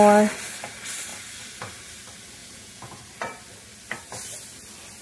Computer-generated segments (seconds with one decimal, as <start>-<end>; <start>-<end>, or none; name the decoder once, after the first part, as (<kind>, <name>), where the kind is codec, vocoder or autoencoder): 2.4-3.0 (vocoder, Vocos)